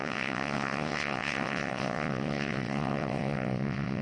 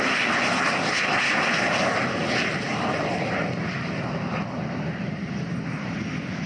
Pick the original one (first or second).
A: second